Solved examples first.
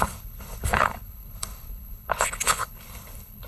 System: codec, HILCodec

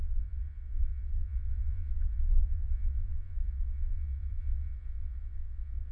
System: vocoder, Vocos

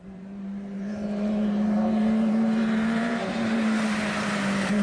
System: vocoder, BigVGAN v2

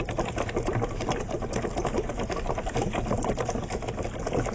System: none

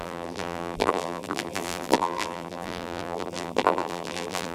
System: vocoder, BigVGAN v2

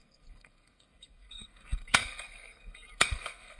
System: codec, SNAC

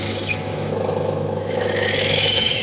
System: autoencoder, DAC-VAE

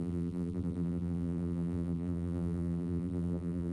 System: vocoder, BigVGAN v2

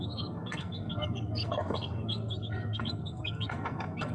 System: codec, SNAC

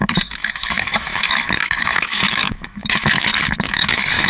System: autoencoder, DAC-VAE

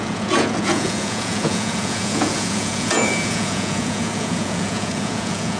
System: vocoder, Vocos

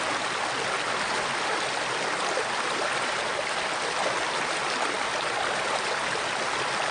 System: none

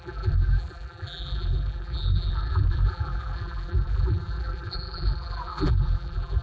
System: vocoder, BigVGAN v2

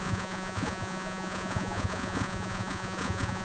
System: vocoder, Vocos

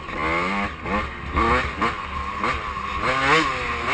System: none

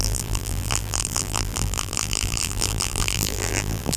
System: vocoder, BigVGAN v2